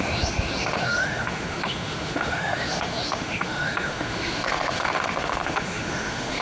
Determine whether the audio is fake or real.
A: fake